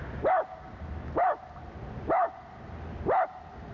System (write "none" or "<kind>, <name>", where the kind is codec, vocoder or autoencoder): none